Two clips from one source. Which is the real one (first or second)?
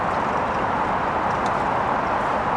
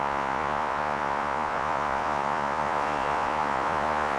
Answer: first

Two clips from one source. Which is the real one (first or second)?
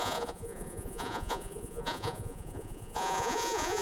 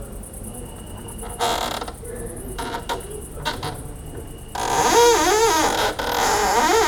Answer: second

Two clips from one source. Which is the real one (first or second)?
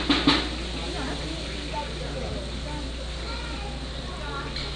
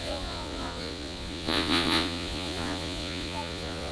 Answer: first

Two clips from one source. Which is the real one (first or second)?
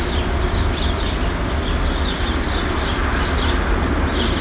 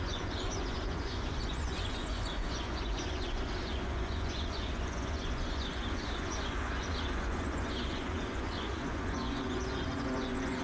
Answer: first